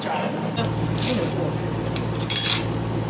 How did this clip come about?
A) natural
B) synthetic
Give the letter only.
A